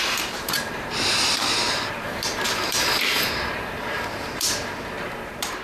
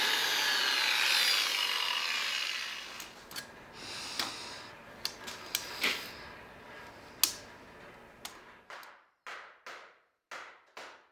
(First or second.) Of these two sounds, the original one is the second